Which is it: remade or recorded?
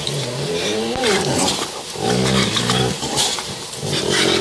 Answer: recorded